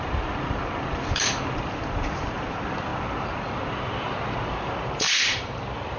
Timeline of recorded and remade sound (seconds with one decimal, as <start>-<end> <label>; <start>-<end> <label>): 0.0-6.0 remade